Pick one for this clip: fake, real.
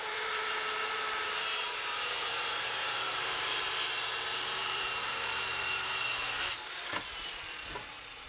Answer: fake